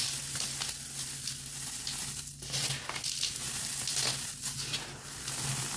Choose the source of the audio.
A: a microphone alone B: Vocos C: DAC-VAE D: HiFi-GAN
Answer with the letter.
A